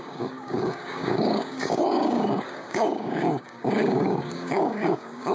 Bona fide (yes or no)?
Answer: no